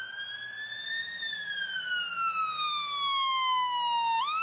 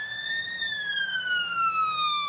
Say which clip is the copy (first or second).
second